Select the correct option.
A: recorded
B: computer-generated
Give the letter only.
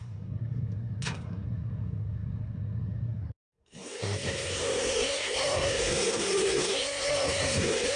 B